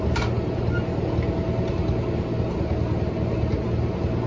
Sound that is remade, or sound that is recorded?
recorded